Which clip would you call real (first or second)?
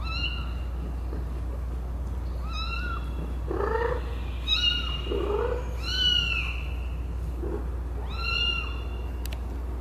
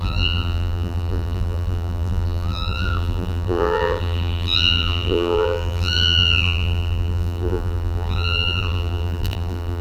first